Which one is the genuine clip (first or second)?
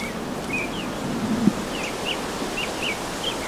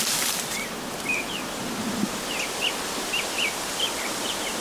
first